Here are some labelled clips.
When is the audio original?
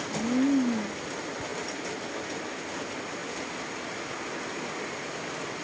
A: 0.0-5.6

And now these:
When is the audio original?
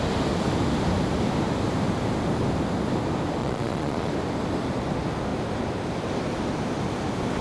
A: 0.0-3.4; 4.1-7.4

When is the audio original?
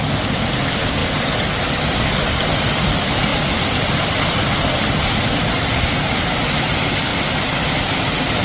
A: 0.0-8.4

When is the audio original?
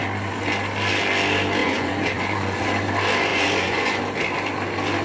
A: 0.0-1.6; 2.6-3.3; 4.0-5.0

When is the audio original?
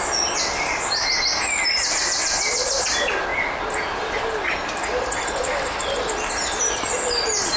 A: 0.0-7.6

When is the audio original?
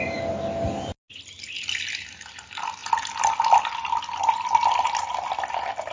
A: 0.0-5.9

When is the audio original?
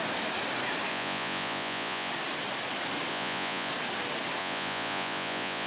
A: 0.0-0.9; 2.1-3.1; 3.7-4.4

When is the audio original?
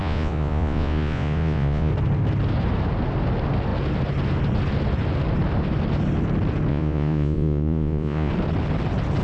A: 1.9-6.7; 8.3-9.2